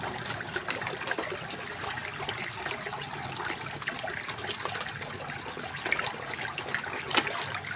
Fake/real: real